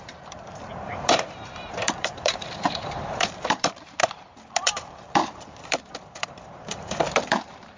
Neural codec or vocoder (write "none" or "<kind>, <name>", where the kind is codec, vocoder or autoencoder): vocoder, BigVGAN v2